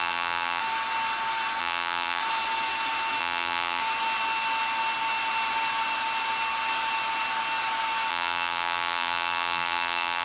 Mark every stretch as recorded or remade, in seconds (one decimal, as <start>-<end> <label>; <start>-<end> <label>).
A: 0.0-0.6 remade; 0.6-1.6 recorded; 1.6-2.2 remade; 2.2-3.2 recorded; 3.2-3.8 remade; 3.8-8.1 recorded; 8.1-10.2 remade

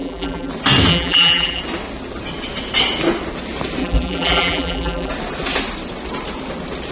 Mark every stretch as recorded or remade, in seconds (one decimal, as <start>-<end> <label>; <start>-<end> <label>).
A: 0.0-0.5 remade; 0.5-0.9 recorded; 0.9-1.6 remade; 1.6-3.8 recorded; 3.8-5.1 remade; 5.1-6.9 recorded

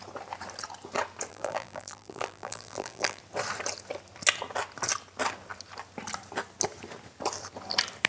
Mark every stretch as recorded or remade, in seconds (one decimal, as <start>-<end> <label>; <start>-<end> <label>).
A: 0.0-1.3 recorded; 1.3-3.2 remade; 3.2-8.1 recorded